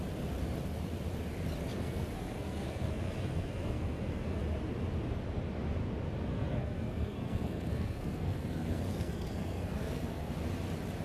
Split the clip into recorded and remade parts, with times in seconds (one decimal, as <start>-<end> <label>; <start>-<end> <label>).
0.0-1.7 recorded; 1.7-4.4 remade; 4.4-6.3 recorded; 6.3-10.3 remade; 10.3-11.0 recorded